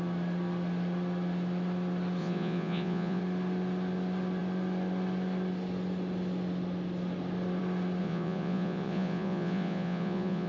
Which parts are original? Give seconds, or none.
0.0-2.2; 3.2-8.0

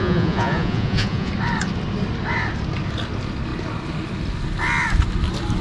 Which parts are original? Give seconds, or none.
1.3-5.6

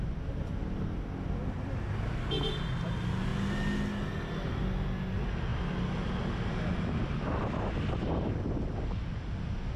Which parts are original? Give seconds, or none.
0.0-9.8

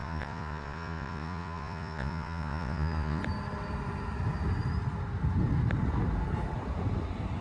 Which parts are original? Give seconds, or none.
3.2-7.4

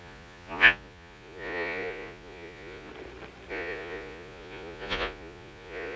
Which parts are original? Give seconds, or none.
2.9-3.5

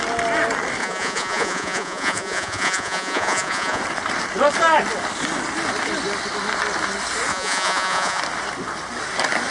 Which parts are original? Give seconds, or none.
0.0-0.8; 3.8-7.3; 8.2-9.5

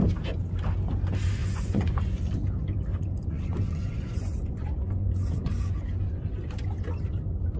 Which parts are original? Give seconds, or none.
0.0-1.4; 2.3-2.9; 6.2-7.6